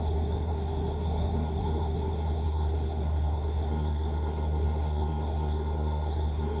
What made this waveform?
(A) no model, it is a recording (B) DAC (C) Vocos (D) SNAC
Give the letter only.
D